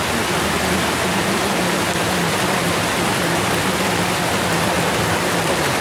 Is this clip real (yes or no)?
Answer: yes